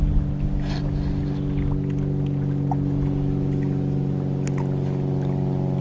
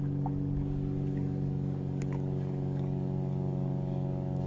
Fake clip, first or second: second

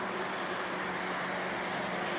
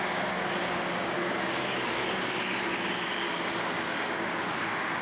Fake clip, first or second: second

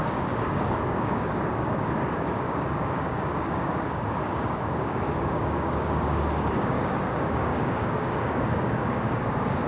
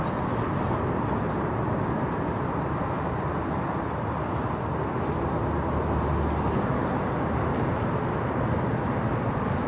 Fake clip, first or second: first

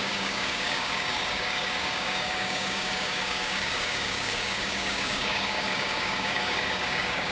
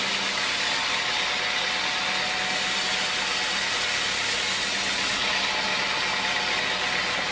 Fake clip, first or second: first